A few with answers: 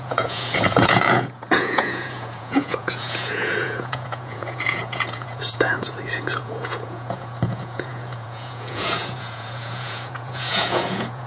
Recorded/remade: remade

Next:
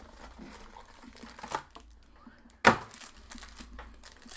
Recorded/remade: recorded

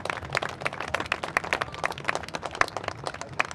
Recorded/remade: recorded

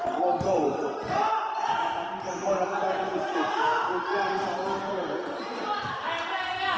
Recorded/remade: remade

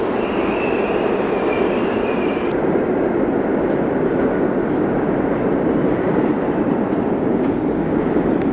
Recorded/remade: recorded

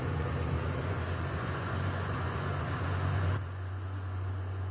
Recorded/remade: remade